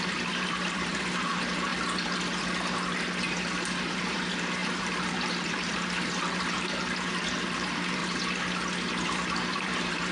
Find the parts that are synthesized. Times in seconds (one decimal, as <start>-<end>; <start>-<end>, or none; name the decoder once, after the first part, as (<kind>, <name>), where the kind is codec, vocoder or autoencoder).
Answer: 0.0-1.7 (vocoder, BigVGAN v2); 3.8-8.0; 9.3-10.1